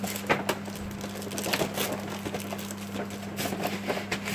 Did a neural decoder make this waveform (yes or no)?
no